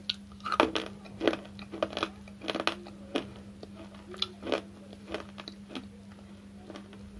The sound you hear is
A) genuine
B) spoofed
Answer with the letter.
A